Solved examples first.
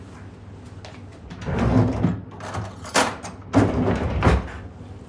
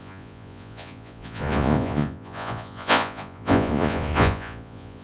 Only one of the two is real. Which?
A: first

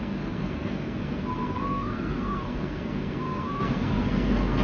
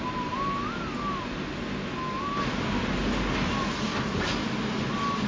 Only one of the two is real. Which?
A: second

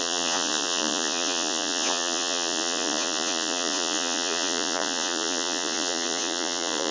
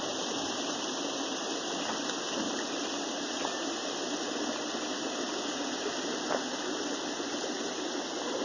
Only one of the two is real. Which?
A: second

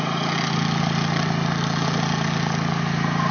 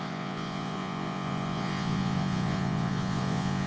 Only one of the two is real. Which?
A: first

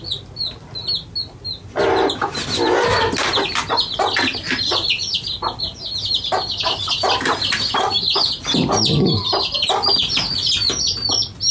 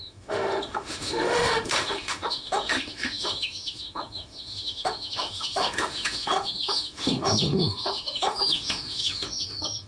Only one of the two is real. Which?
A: first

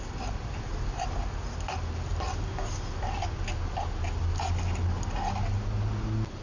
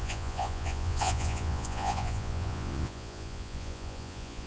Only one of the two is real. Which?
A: first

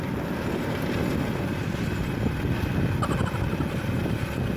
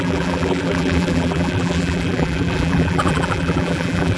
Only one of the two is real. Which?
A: first